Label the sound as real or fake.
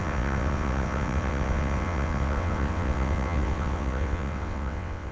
fake